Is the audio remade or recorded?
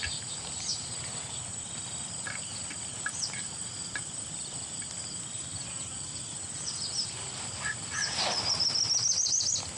recorded